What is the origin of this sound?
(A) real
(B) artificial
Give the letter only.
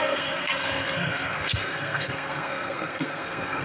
B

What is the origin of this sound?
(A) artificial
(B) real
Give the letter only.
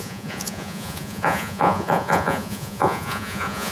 A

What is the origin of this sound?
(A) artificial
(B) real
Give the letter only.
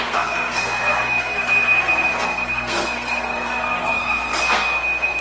A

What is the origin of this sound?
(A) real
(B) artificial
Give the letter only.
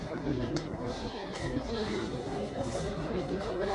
B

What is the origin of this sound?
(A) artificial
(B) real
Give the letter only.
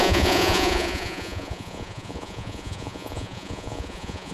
A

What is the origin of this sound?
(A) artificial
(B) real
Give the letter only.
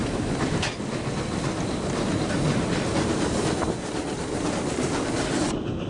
B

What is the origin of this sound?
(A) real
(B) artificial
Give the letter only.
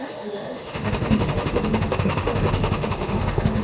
B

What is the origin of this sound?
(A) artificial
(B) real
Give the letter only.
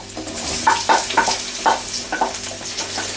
B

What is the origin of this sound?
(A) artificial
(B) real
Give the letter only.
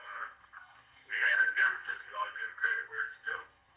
A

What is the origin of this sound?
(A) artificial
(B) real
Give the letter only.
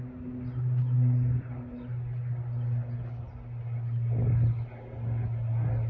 B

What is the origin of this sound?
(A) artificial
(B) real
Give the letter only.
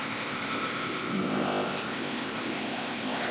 A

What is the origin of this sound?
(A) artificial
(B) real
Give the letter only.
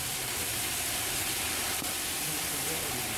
A